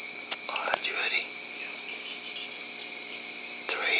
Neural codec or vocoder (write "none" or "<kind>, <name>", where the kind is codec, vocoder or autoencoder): none